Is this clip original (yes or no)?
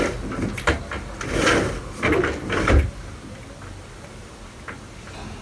yes